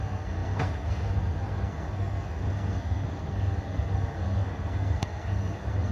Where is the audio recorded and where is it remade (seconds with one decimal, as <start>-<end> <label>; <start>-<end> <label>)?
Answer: 0.0-5.9 remade